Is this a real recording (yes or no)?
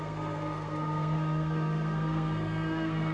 no